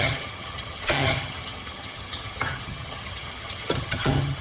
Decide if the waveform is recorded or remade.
remade